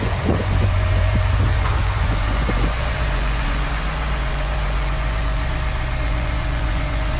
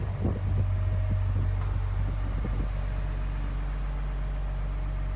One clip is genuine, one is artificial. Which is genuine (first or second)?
second